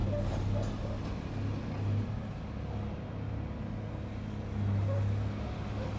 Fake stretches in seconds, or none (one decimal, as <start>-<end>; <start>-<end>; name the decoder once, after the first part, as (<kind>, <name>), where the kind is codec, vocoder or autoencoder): none